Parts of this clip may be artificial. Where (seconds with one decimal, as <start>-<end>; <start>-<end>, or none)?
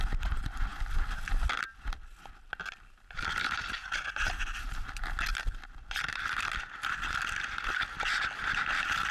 none